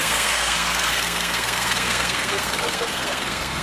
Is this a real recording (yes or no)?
no